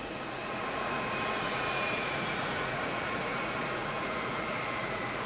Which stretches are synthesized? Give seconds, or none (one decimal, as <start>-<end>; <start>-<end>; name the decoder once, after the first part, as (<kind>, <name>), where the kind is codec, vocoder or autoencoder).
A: 0.0-5.3 (vocoder, Vocos)